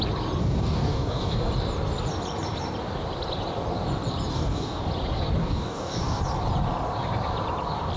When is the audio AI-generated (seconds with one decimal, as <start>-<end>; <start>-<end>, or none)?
0.4-1.5; 4.3-4.8; 5.4-6.2